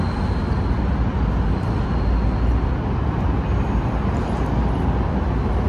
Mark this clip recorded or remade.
recorded